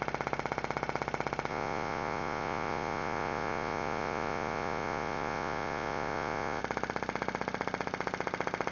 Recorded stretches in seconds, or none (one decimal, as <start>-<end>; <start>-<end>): 0.0-1.5; 6.6-8.7